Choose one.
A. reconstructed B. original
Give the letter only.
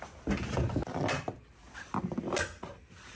B